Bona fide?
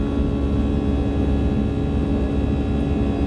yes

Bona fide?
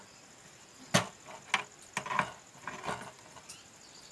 yes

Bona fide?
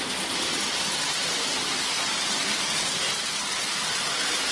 yes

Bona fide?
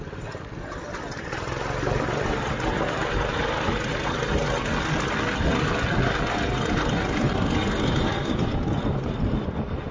yes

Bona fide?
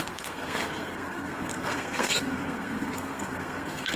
no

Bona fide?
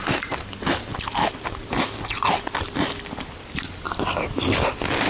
yes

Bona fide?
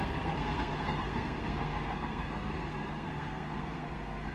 no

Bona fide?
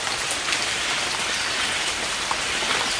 yes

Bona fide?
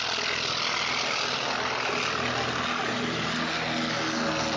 yes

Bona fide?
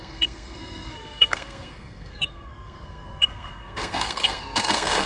no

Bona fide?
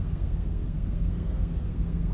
no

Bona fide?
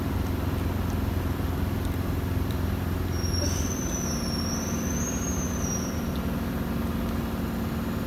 yes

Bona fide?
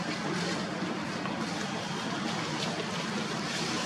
yes